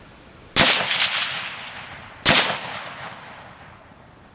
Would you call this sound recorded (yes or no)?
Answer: yes